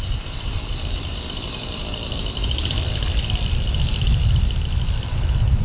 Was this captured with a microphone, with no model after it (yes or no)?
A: yes